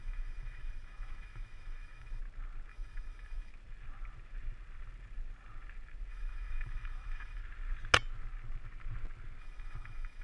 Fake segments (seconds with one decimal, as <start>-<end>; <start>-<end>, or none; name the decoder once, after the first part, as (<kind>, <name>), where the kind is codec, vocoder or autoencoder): 0.0-2.2 (autoencoder, DAC-VAE); 2.7-3.5; 6.1-7.4; 9.4-10.2